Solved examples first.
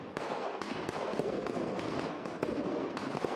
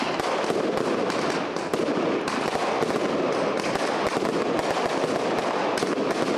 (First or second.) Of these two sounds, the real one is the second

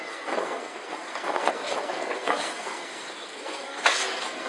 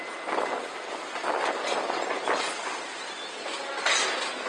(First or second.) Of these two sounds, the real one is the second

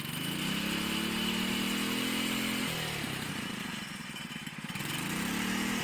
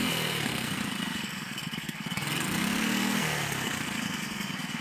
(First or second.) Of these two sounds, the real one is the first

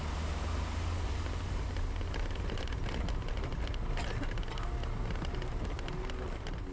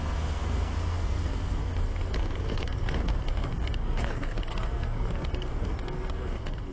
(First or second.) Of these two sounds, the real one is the first